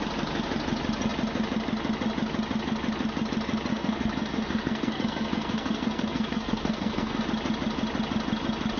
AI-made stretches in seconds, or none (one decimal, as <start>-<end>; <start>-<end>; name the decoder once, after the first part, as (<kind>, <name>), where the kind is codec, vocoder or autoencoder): 3.7-7.2 (codec, SNAC)